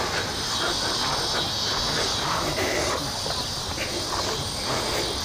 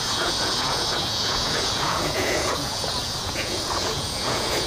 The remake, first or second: second